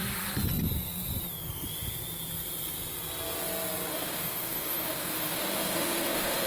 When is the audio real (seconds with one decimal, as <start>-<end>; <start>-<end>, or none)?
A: 0.0-3.9